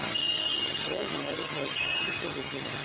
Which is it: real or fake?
fake